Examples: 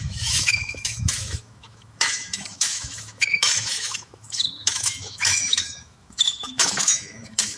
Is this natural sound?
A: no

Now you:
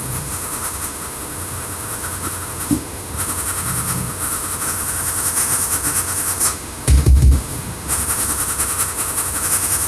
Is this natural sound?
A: no